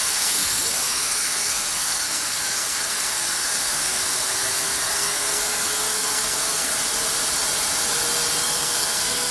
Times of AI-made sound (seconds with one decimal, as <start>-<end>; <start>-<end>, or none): 0.0-6.7; 8.4-9.3